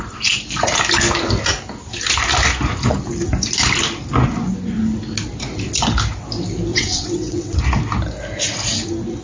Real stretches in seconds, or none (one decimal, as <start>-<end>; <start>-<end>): 0.0-6.7; 7.6-9.2